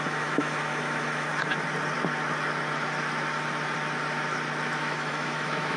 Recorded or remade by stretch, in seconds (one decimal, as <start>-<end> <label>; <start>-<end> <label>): 0.0-1.3 remade; 1.3-4.8 recorded; 4.8-5.8 remade